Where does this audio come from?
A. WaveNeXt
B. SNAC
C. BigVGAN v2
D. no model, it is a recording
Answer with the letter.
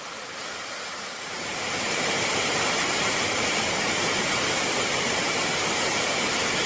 C